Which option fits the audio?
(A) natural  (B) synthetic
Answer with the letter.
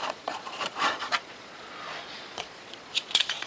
B